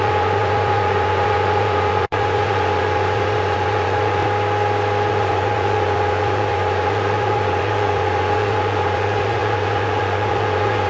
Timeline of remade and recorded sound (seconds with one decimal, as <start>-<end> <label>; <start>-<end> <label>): 0.0-4.2 remade; 4.2-5.1 recorded; 5.1-10.9 remade